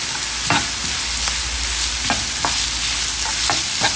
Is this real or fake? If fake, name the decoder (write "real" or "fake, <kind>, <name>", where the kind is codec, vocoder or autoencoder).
real